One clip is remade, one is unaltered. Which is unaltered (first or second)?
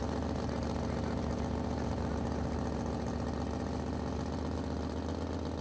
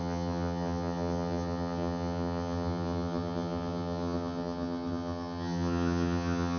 first